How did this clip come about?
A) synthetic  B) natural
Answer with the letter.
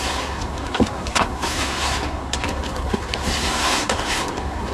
A